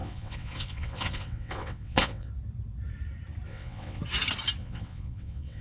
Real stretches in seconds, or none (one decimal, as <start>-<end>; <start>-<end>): 2.3-3.5; 4.0-4.6